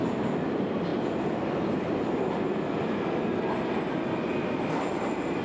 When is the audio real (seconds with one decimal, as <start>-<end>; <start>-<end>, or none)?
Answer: 0.0-5.4